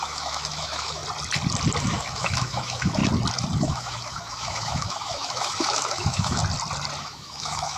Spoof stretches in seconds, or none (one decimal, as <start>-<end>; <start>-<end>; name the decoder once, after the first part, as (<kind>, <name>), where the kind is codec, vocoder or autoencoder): 0.0-1.0 (autoencoder, DAC-VAE); 1.8-3.0; 3.6-6.4; 7.0-7.8